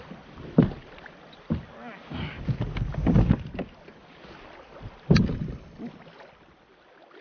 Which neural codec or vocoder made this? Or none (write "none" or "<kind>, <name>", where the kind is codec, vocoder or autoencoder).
none